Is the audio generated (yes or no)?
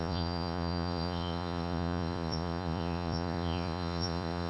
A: yes